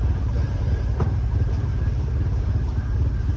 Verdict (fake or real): fake